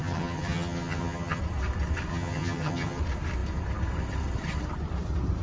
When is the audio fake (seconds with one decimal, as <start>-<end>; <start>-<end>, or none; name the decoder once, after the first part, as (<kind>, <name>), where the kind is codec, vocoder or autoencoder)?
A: 0.0-1.4 (vocoder, HiFi-GAN); 2.1-3.0